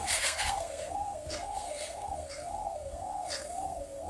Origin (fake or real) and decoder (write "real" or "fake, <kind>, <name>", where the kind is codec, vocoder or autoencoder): fake, codec, SNAC